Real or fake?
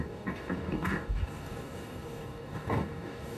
fake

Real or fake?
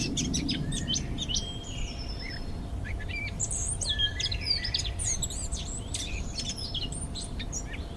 fake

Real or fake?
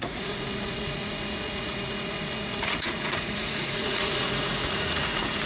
fake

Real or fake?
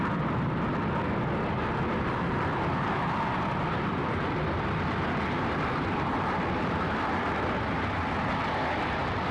real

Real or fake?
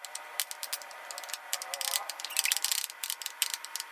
real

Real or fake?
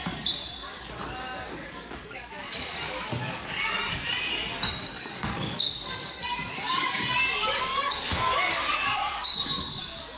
fake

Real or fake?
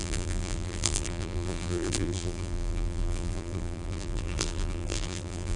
fake